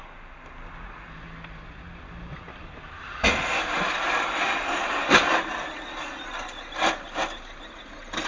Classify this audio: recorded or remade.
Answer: recorded